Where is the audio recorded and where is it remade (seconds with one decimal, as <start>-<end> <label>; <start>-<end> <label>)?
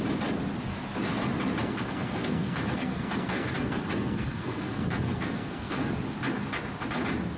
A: 0.0-1.6 recorded; 1.6-5.9 remade; 5.9-7.4 recorded